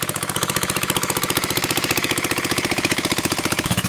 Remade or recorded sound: remade